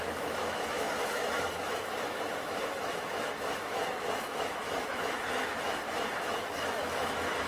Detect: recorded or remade remade